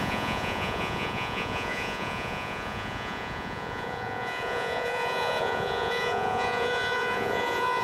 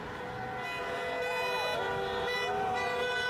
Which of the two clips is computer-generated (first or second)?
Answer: first